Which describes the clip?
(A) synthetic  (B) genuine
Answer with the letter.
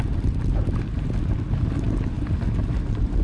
B